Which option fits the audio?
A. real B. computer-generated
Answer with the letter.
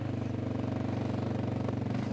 A